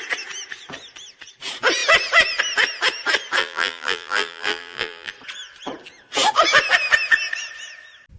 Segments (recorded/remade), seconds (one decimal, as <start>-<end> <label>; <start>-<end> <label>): 0.0-3.4 recorded; 3.4-5.1 remade; 5.1-8.2 recorded